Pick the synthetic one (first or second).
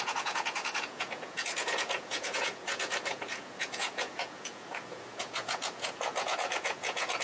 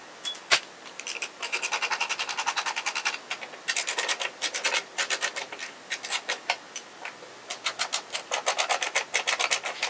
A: first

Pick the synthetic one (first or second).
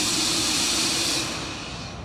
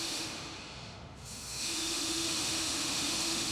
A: second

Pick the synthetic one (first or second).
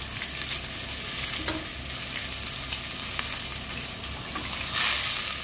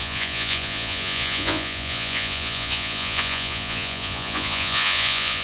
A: second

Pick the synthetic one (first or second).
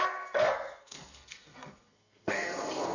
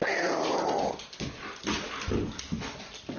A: first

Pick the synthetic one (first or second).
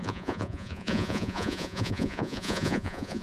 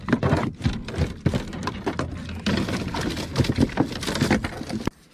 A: first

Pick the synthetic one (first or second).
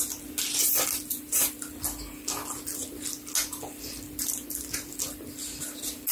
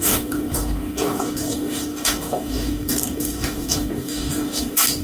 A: second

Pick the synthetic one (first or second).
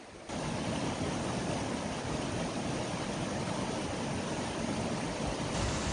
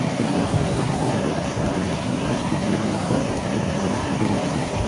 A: second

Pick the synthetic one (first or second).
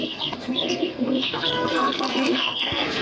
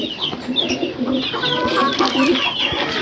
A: first